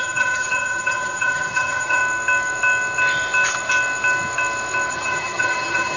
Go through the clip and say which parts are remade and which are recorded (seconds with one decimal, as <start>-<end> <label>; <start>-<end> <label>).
0.0-2.0 remade; 2.0-4.9 recorded; 4.9-6.0 remade